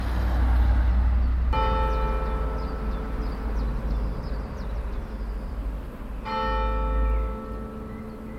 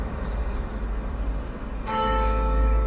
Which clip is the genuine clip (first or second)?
first